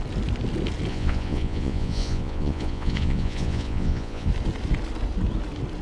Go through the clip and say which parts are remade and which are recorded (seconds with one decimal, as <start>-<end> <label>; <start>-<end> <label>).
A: 0.0-0.9 recorded; 0.9-4.3 remade; 4.3-5.8 recorded